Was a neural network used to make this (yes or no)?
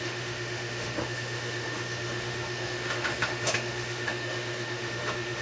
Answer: yes